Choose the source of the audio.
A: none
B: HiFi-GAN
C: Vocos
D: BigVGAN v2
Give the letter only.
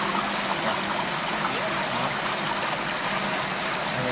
A